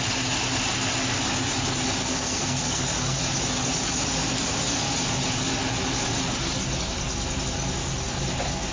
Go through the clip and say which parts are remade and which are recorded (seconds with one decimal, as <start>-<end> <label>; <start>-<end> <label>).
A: 0.0-2.0 recorded; 2.0-3.2 remade; 3.2-8.7 recorded